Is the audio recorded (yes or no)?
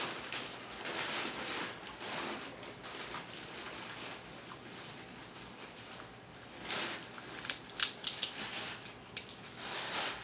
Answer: yes